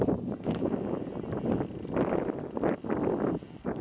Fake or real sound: real